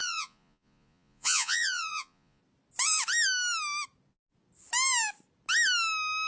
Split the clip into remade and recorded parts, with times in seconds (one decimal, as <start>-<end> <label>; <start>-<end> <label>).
0.0-2.4 remade; 2.4-6.3 recorded